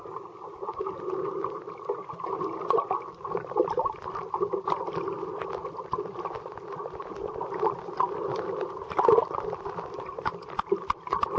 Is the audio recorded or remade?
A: recorded